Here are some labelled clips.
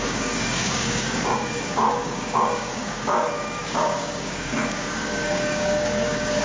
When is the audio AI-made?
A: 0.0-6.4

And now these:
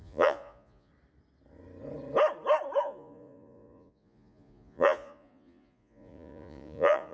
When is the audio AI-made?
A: 0.0-0.9; 2.8-7.1

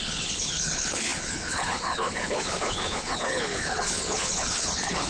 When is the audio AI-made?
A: 0.0-5.1

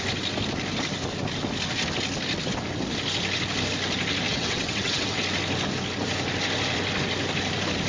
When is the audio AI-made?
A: 4.3-5.2

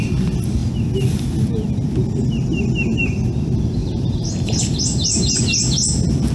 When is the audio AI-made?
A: 3.8-5.4

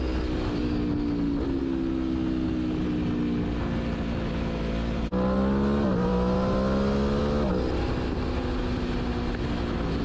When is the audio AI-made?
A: none

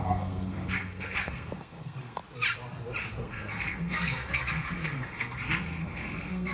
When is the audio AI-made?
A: 0.0-2.2; 3.1-6.5

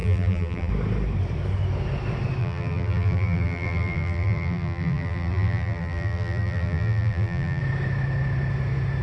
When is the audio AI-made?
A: 0.0-0.7; 2.4-7.6